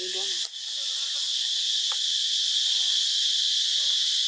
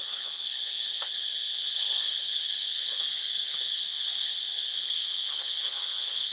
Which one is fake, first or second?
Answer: second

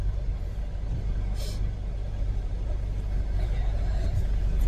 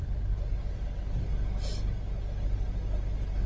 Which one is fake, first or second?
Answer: first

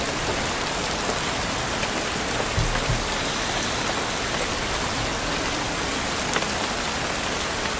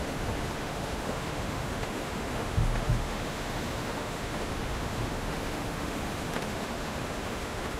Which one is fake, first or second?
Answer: second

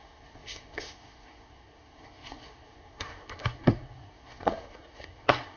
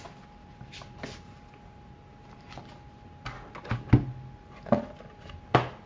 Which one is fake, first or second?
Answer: first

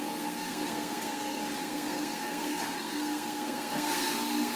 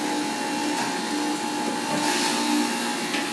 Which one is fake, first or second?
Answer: first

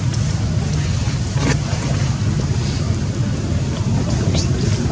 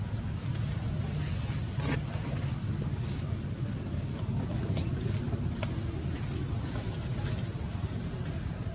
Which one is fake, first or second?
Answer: first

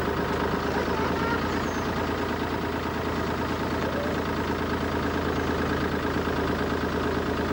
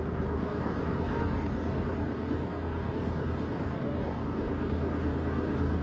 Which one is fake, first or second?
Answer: second